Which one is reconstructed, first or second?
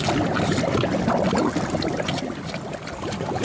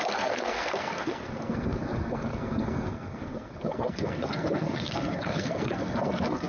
second